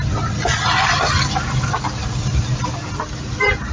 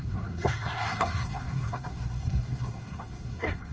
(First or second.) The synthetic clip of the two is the second